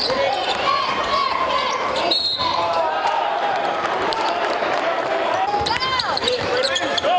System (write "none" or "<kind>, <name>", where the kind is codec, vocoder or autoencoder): vocoder, BigVGAN v2